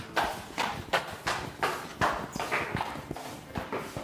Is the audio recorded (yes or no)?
yes